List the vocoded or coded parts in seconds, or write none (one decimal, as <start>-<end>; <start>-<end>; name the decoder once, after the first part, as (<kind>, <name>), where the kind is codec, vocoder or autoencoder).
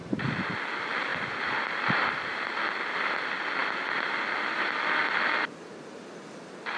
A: 0.0-0.5 (vocoder, BigVGAN v2); 1.1-2.2; 3.6-5.0